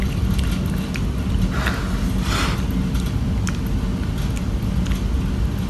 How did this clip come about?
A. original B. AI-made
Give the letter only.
A